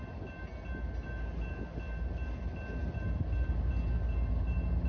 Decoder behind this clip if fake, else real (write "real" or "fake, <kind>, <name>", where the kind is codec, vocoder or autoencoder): real